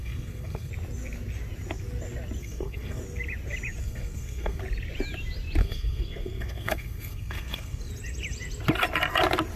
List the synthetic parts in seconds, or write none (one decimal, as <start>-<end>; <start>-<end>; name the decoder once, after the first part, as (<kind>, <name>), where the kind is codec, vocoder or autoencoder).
0.0-0.7 (codec, SNAC); 2.4-3.0; 3.8-4.6; 5.6-7.9